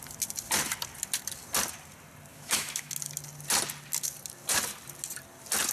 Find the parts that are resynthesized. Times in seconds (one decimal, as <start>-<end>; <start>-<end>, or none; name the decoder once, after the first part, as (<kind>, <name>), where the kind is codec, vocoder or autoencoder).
2.3-2.9 (autoencoder, DAC-VAE)